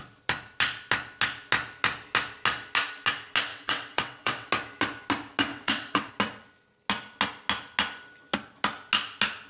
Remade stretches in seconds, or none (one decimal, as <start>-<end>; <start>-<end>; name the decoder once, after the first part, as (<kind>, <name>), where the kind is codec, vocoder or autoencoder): 3.5-4.5 (vocoder, WaveNeXt); 5.5-6.1